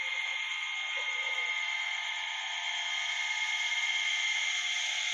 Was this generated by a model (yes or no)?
no